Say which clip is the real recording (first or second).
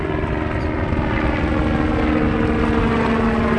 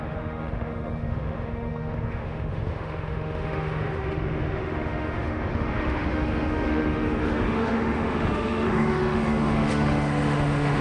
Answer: first